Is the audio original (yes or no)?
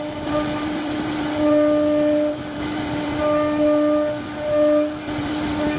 yes